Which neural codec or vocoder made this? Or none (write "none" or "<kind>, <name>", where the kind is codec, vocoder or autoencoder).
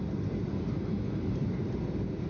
none